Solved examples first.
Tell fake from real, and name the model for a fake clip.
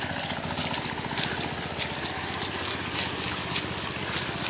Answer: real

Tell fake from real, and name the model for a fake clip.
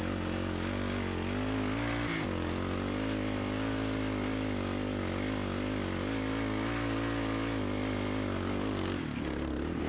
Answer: real